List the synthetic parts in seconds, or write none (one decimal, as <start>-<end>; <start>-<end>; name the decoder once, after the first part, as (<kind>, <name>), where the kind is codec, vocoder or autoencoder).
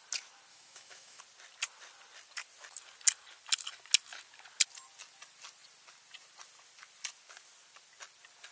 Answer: 0.5-1.2 (autoencoder, DAC-VAE)